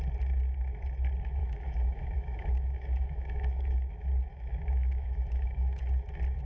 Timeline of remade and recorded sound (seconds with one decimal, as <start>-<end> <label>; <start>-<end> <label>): 0.0-1.4 recorded; 1.4-3.9 remade; 3.9-4.3 recorded; 4.3-5.8 remade; 5.8-6.4 recorded